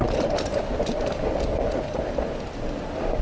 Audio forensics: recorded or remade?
recorded